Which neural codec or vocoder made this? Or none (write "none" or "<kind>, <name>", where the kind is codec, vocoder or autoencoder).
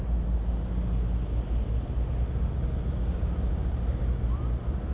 none